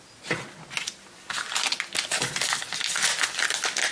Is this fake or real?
real